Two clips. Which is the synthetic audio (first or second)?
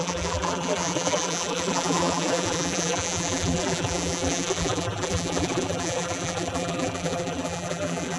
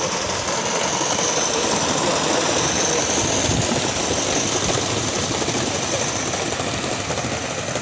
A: first